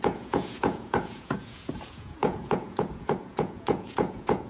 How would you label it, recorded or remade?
remade